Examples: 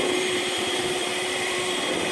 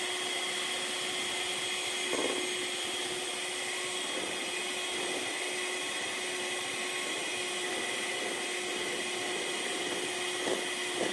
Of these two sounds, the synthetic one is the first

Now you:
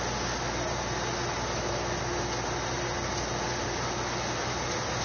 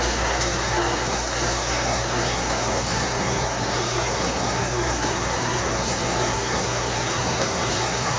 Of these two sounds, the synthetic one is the second